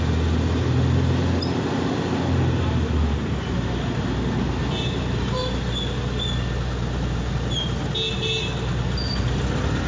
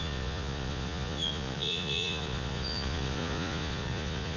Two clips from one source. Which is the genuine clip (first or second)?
first